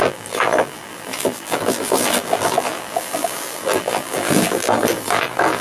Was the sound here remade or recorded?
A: remade